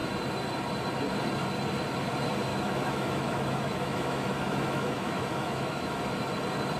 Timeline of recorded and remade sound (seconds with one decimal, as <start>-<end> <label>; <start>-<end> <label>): 0.0-2.5 recorded; 2.5-6.0 remade; 6.0-6.8 recorded